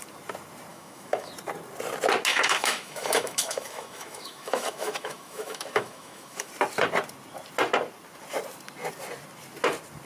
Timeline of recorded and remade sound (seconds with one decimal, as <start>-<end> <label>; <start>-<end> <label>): 0.0-0.7 recorded; 0.7-1.3 remade; 1.3-2.3 recorded; 2.3-6.5 remade; 6.5-10.1 recorded